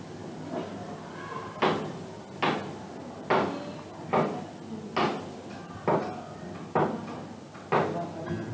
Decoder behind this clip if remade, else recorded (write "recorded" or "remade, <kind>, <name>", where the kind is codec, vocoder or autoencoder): recorded